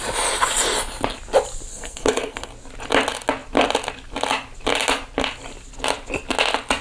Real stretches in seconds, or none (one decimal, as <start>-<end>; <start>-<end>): 0.0-1.7; 2.5-6.8